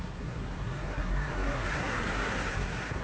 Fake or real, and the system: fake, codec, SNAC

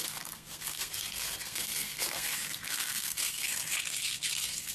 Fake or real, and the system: fake, codec, SNAC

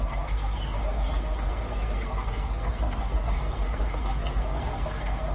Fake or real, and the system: fake, codec, SNAC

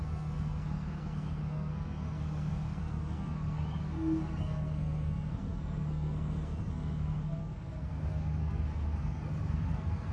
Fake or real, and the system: fake, codec, SNAC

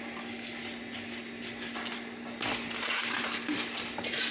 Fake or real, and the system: real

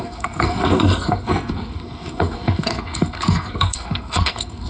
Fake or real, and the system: fake, codec, SNAC